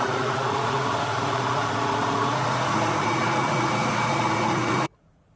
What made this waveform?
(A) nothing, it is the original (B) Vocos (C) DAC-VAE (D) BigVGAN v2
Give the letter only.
B